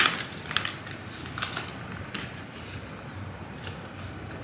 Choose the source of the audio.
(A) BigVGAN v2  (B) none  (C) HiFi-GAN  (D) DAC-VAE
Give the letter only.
B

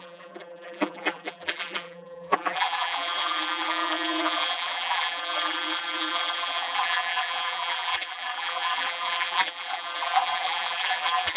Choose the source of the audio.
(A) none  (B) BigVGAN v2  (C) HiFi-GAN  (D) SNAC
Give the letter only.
B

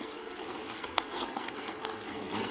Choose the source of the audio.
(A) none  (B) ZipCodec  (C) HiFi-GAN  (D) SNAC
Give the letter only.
D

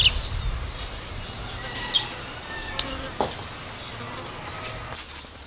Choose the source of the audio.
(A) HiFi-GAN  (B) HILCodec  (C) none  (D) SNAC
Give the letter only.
C